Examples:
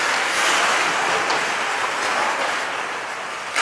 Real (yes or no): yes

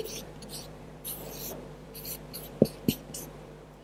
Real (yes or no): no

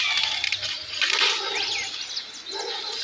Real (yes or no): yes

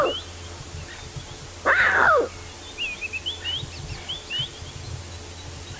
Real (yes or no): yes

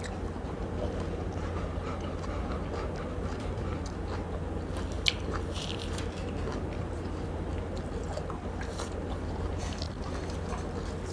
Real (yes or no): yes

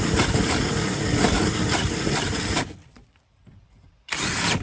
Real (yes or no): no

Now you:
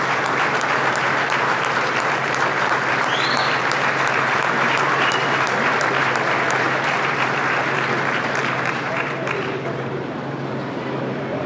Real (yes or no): no